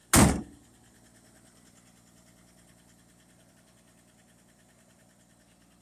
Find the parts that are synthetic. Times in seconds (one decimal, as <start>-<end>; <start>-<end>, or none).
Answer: none